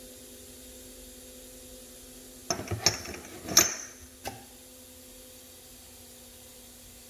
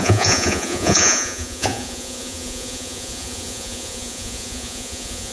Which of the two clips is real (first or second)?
first